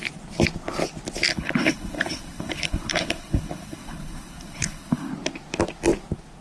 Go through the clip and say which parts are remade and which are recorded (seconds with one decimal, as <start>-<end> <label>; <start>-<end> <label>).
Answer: 0.0-1.3 recorded; 1.3-5.1 remade; 5.1-6.4 recorded